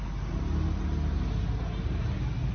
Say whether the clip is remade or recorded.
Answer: recorded